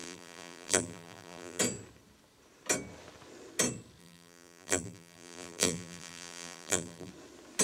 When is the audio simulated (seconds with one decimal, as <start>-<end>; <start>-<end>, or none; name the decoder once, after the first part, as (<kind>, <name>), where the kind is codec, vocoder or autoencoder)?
0.0-1.6 (vocoder, BigVGAN v2); 4.0-7.1